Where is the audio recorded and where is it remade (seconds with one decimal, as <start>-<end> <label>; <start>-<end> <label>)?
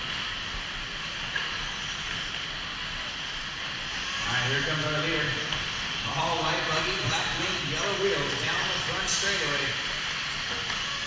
0.0-5.3 recorded; 5.3-8.8 remade; 8.8-11.1 recorded